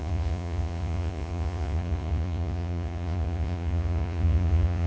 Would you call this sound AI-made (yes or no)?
yes